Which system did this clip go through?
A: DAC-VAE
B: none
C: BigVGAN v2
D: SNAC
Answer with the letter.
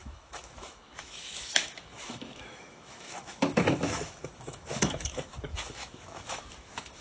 A